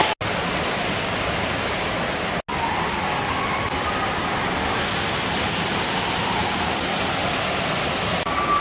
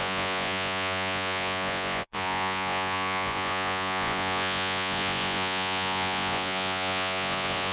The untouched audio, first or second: first